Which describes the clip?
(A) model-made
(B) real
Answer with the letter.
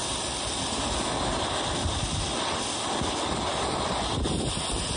B